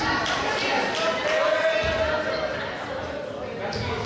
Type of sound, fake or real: real